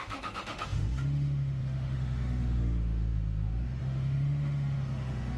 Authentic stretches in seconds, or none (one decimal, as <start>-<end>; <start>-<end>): none